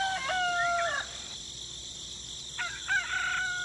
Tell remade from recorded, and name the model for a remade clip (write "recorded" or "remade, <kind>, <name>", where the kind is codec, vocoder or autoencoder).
recorded